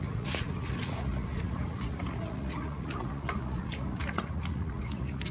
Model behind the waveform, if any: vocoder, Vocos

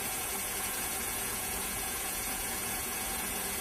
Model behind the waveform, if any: vocoder, Vocos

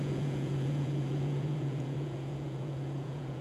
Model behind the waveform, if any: vocoder, Vocos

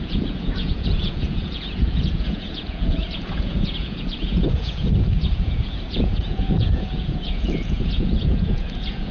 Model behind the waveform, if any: vocoder, Vocos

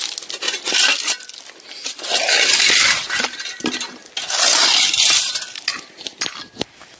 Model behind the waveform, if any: none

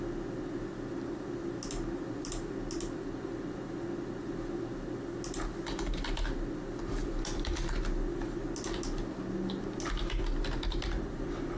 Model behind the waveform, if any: none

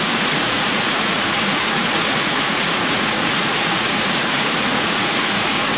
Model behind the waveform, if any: vocoder, Vocos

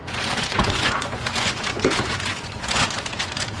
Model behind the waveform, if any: vocoder, Vocos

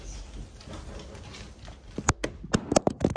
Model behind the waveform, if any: none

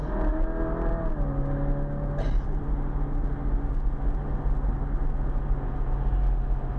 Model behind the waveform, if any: none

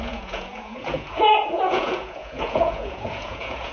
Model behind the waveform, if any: vocoder, Vocos